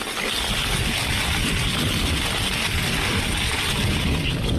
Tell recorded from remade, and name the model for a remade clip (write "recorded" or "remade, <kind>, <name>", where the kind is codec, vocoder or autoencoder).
recorded